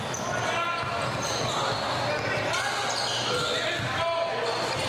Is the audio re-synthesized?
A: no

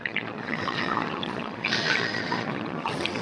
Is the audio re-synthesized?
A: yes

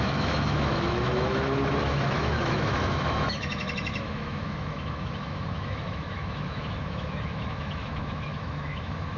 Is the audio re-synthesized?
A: yes